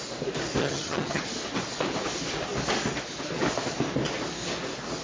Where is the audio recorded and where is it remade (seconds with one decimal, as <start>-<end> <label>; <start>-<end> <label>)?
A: 0.0-0.6 recorded; 0.6-1.2 remade; 1.2-5.0 recorded